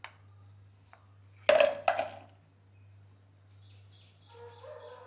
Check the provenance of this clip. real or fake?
real